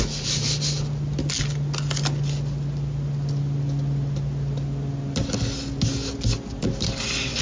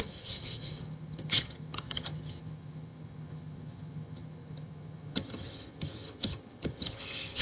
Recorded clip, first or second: first